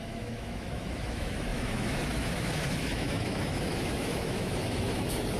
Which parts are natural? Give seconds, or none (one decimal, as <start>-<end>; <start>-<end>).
none